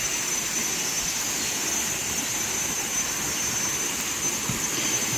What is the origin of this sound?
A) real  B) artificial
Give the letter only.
A